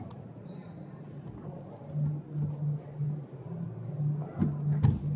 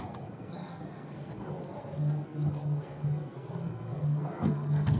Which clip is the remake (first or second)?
second